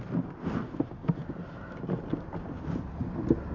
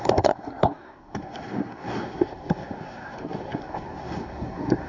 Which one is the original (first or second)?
first